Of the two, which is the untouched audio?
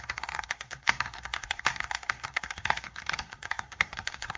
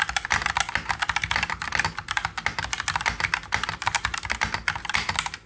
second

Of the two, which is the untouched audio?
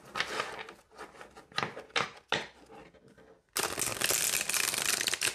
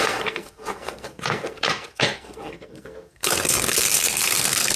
first